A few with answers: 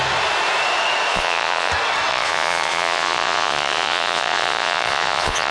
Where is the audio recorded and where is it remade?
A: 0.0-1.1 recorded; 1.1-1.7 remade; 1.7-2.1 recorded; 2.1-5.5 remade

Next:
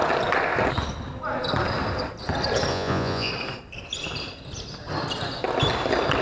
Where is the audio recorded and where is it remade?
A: 0.0-2.7 recorded; 2.7-3.3 remade; 3.3-6.2 recorded

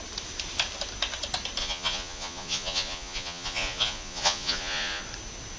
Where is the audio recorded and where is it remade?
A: 0.0-1.6 recorded; 1.6-5.0 remade; 5.0-5.6 recorded

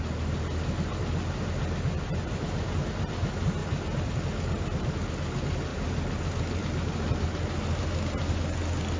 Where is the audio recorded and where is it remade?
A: 0.0-9.0 recorded

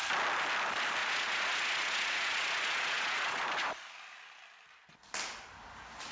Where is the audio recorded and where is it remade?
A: 0.0-1.0 recorded; 1.0-3.4 remade; 3.4-6.1 recorded